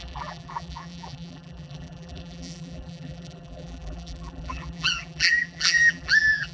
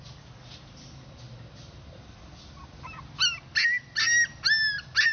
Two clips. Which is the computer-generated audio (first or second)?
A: first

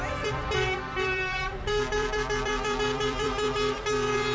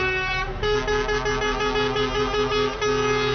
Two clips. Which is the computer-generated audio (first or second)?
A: first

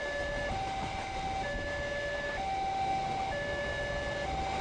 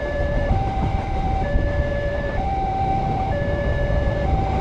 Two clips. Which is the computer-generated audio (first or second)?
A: second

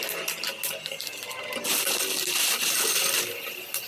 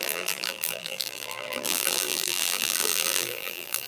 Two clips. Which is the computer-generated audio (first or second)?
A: second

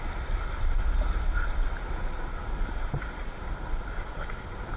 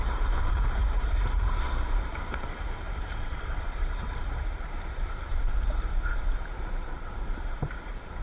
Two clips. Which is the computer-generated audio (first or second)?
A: second